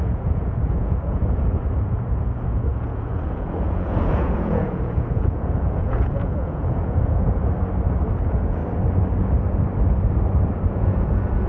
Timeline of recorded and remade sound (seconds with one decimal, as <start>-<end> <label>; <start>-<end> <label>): 0.0-7.4 remade; 7.4-8.1 recorded; 8.1-8.6 remade; 8.6-10.7 recorded; 10.7-11.5 remade